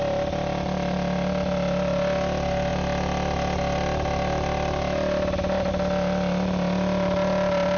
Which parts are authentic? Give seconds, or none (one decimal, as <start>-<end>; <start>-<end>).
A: 0.0-7.8